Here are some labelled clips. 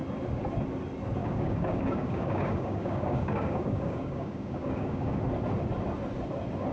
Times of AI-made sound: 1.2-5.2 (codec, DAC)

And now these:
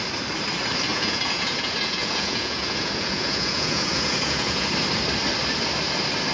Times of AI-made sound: 0.9-4.7 (vocoder, Vocos)

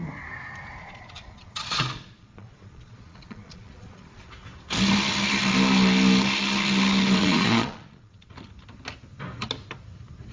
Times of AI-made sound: 0.8-4.3 (vocoder, Vocos); 7.2-8.3

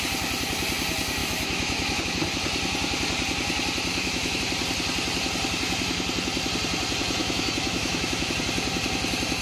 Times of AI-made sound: 1.2-2.0 (autoencoder, DAC-VAE); 3.9-4.4; 7.2-8.3